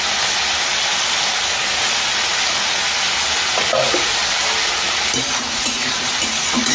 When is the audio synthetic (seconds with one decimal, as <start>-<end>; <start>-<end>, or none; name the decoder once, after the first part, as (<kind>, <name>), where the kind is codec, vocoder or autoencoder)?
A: none